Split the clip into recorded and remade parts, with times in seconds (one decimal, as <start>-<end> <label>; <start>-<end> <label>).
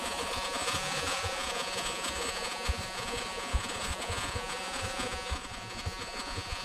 0.0-6.6 remade